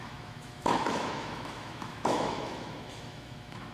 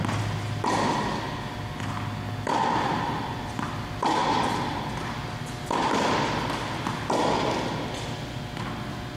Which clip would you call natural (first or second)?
second